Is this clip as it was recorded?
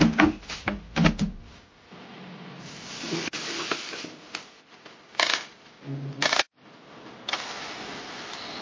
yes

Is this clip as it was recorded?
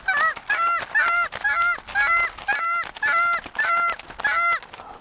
yes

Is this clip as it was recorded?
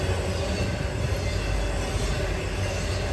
yes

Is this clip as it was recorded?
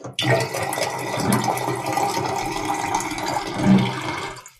yes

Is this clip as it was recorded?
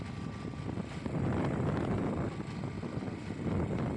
yes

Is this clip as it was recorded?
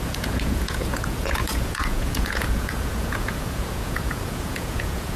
no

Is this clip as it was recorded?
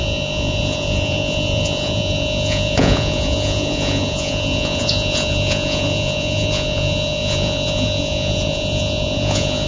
no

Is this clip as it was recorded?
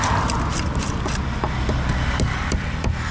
yes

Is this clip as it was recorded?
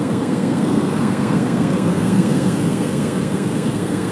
no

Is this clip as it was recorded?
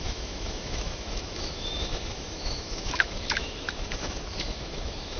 no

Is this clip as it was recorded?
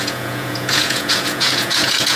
no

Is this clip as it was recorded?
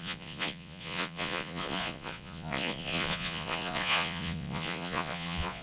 no